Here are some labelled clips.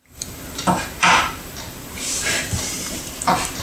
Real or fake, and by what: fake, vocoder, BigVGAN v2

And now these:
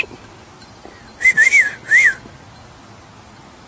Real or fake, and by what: real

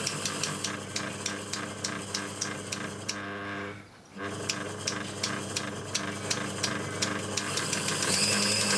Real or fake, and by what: real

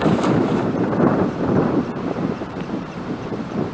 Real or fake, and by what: fake, vocoder, BigVGAN v2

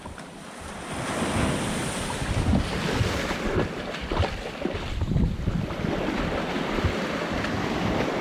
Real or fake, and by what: real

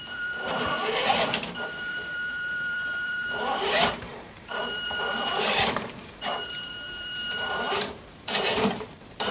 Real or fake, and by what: fake, vocoder, BigVGAN v2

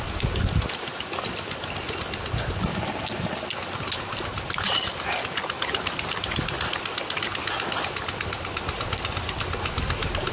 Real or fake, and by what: real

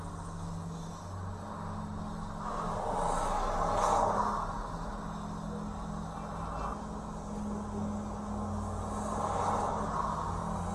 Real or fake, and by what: real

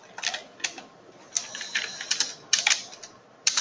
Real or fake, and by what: fake, vocoder, BigVGAN v2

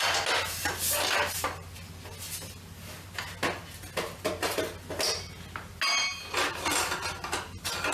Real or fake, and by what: real